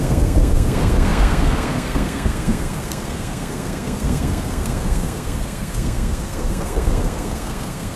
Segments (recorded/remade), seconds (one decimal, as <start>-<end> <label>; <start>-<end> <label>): 0.0-8.0 remade